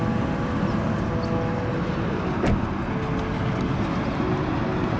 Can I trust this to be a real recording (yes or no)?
yes